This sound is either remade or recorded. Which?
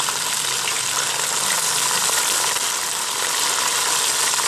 recorded